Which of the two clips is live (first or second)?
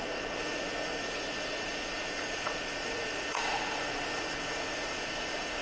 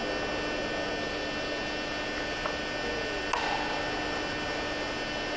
second